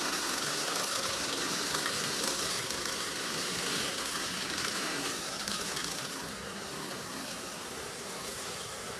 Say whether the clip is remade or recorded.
remade